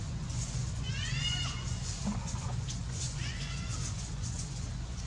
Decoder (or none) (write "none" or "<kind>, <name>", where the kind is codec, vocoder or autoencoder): vocoder, Vocos